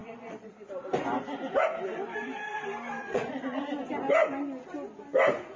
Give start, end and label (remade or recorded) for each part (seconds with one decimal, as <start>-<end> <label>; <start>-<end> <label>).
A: 0.0-0.5 remade; 0.5-3.0 recorded; 3.0-3.6 remade; 3.6-5.6 recorded